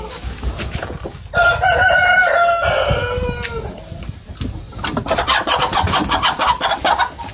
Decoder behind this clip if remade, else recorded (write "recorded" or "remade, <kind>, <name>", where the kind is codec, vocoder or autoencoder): recorded